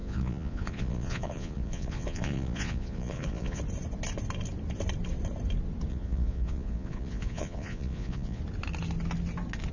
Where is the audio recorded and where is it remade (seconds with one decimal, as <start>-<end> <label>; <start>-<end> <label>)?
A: 0.0-3.6 remade; 3.6-5.9 recorded; 5.9-8.4 remade; 8.4-9.7 recorded